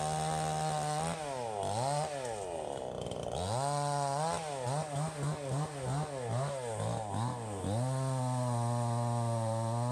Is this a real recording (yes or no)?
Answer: yes